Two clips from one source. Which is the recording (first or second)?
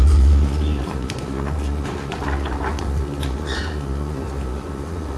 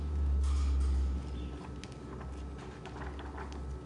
second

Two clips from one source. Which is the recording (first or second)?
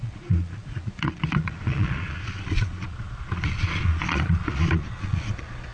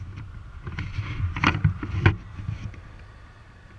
second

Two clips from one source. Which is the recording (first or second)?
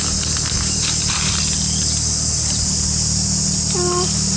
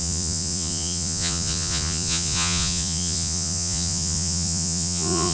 first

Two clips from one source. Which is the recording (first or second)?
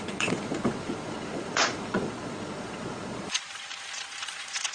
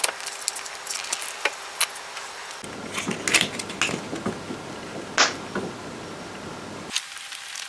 second